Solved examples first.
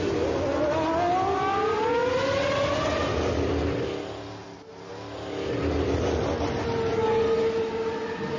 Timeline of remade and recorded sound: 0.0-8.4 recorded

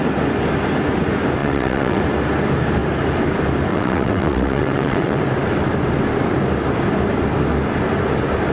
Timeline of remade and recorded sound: 0.0-1.4 recorded; 1.4-2.0 remade; 2.0-3.7 recorded; 3.7-5.2 remade; 5.2-8.5 recorded